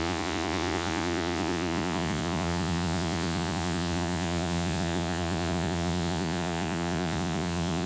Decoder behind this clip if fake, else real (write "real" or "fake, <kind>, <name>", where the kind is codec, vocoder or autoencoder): fake, vocoder, Vocos